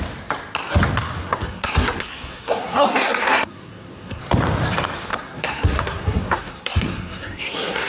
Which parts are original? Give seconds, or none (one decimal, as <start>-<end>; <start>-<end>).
0.0-1.2; 4.2-5.1